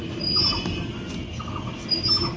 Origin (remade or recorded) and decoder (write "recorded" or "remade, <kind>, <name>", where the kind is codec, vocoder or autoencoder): recorded